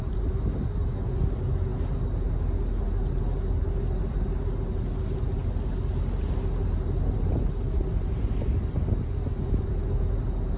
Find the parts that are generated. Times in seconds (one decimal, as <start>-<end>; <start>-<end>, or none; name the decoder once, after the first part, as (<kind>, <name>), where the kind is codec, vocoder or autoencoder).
none